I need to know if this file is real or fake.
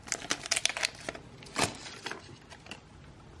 real